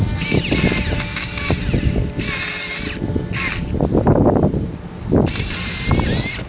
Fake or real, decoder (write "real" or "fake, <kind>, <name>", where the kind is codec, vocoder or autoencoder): real